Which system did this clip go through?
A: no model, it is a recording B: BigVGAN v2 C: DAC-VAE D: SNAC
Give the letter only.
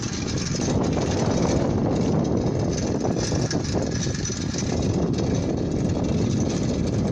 A